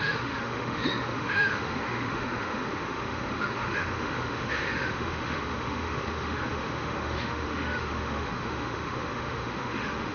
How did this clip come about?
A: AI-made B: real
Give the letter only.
A